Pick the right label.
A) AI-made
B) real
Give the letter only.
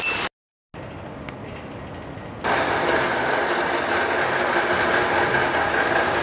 B